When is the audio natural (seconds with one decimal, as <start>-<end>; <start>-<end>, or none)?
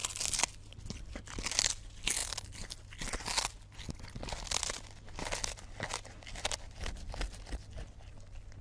0.0-8.6